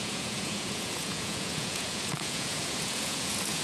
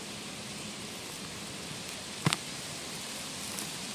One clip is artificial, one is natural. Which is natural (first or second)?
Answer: second